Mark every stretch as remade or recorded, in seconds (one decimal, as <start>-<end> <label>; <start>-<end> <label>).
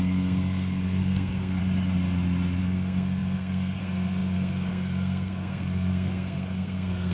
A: 0.0-1.6 remade; 1.6-2.6 recorded; 2.6-7.1 remade